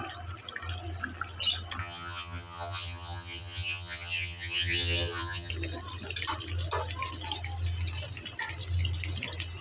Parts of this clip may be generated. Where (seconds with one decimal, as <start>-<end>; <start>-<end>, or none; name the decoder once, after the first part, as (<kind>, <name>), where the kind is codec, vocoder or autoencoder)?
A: 1.8-5.5 (vocoder, HiFi-GAN)